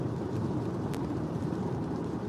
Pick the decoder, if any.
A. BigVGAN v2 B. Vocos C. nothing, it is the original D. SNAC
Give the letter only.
A